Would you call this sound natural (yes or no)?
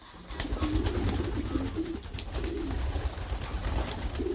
yes